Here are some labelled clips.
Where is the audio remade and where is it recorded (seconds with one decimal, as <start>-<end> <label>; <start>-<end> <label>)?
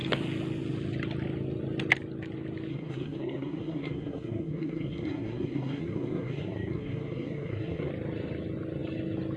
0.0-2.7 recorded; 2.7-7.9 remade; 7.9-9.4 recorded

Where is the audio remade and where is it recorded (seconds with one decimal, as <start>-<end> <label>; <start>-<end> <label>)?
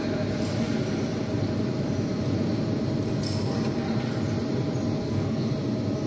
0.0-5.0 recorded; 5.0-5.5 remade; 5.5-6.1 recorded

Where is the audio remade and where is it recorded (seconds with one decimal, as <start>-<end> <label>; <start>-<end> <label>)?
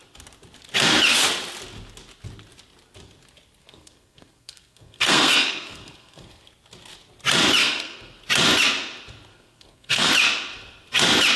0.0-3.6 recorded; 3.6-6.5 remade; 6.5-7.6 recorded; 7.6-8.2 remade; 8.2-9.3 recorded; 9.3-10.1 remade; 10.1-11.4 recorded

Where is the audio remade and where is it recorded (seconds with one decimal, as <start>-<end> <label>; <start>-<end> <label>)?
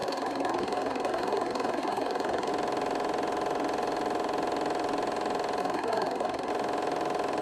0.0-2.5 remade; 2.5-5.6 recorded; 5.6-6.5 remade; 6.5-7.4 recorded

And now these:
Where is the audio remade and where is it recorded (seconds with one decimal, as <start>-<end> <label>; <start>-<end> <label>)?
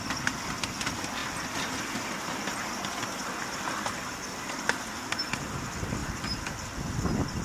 0.0-7.4 recorded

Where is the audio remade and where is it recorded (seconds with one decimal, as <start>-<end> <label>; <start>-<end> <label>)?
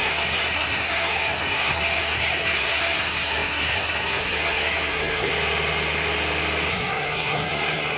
0.0-5.3 remade; 5.3-6.7 recorded; 6.7-8.0 remade